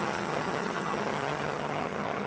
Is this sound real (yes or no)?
no